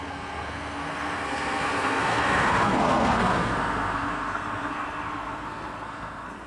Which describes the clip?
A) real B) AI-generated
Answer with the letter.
B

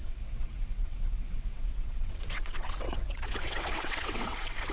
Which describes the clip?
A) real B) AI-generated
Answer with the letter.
B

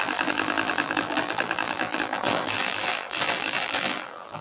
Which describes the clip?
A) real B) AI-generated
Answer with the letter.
B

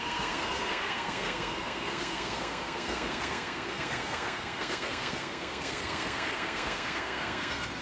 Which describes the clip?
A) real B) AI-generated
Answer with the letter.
B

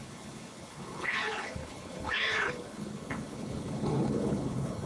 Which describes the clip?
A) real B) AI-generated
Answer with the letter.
B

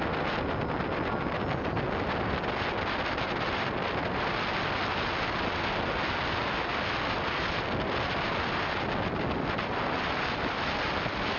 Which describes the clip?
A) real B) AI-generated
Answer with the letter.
A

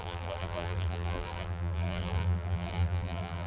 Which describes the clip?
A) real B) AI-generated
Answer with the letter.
B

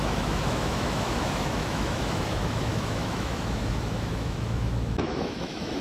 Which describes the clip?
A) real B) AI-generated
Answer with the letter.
B